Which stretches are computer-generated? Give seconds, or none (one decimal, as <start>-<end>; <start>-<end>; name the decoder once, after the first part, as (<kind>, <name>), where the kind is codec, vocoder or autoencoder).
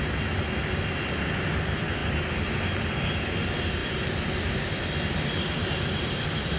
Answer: 3.8-4.7 (vocoder, BigVGAN v2); 5.6-6.6